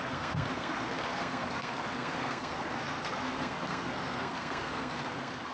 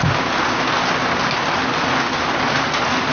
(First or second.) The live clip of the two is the second